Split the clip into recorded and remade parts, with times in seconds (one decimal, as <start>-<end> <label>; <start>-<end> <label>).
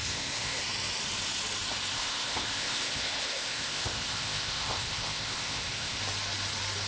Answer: 0.0-0.6 remade; 0.6-1.9 recorded; 1.9-6.0 remade; 6.0-6.9 recorded